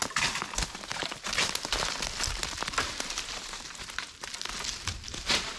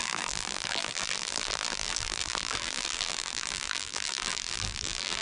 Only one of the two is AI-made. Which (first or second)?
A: second